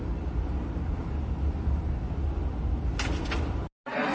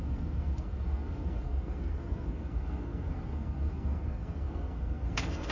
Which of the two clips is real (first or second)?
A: first